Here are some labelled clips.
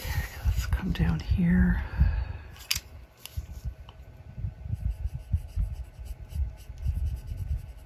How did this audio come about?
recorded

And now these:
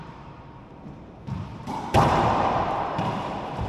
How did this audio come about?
remade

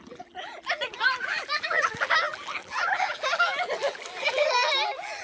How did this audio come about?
remade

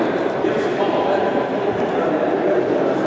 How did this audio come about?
recorded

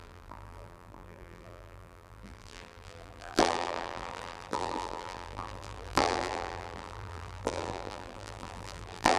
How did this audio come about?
remade